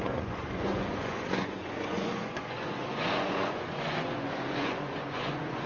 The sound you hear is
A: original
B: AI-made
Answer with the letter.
B